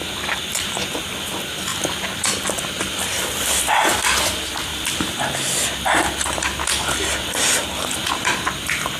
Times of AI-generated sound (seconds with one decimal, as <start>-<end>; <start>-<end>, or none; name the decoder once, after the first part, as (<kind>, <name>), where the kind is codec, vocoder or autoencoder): 1.7-2.4 (vocoder, BigVGAN v2); 4.7-8.1